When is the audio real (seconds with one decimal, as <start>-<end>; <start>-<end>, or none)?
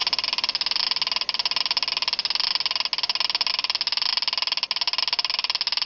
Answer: 0.0-5.9